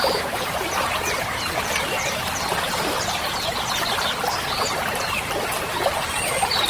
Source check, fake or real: fake